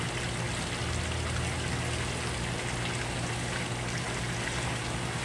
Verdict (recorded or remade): recorded